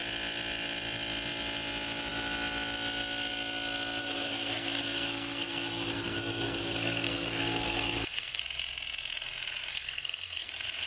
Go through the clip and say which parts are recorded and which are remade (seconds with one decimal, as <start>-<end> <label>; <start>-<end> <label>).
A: 0.0-4.0 recorded; 4.0-8.4 remade; 8.4-9.7 recorded; 9.7-10.5 remade; 10.5-10.9 recorded